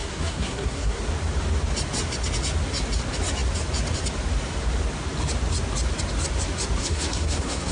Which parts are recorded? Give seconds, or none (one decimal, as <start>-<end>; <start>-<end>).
1.0-6.8